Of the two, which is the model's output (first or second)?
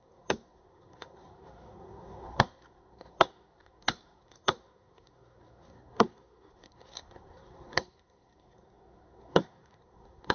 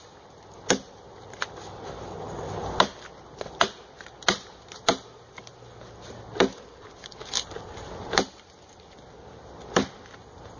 first